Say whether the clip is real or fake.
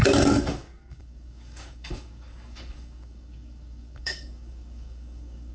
fake